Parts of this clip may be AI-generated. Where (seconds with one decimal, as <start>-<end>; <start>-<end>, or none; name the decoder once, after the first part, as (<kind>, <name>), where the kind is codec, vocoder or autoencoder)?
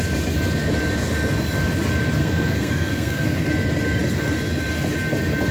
2.2-3.5 (codec, SNAC)